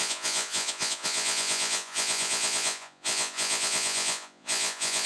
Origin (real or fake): fake